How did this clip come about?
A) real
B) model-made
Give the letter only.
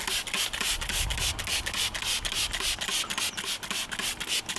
A